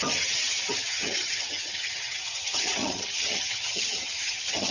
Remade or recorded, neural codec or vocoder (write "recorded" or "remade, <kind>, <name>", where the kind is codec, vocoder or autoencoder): remade, vocoder, HiFi-GAN